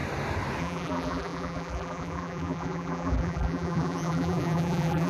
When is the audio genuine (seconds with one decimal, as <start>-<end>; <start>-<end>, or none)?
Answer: 0.0-0.6